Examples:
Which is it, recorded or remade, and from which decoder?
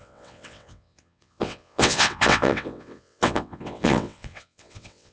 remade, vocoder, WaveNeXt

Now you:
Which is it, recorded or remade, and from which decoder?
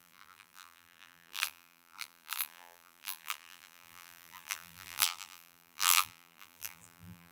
remade, vocoder, BigVGAN v2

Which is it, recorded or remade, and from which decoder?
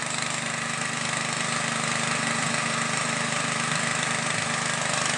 recorded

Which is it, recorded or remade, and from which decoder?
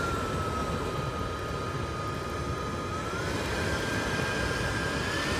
recorded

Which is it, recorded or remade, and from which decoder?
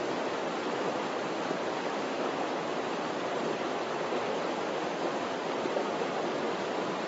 recorded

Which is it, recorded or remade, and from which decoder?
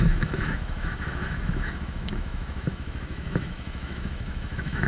remade, autoencoder, DAC-VAE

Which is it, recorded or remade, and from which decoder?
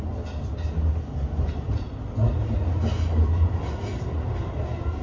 recorded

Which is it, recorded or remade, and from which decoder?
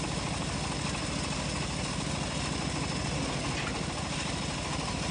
recorded